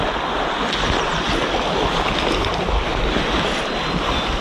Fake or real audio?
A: real